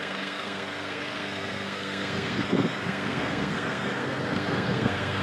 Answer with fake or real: fake